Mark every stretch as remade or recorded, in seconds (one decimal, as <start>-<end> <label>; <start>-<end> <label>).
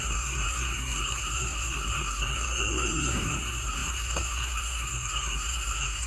0.0-6.1 remade